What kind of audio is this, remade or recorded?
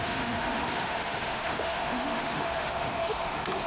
remade